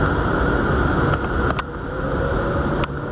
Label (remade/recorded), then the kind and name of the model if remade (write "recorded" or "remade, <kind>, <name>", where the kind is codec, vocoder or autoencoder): recorded